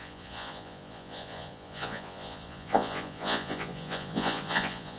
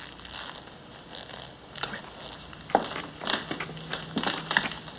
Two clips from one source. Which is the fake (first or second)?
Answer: first